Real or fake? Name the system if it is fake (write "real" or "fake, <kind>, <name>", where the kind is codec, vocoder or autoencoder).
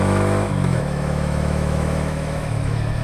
fake, autoencoder, DAC-VAE